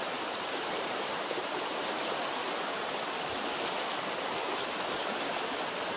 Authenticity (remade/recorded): recorded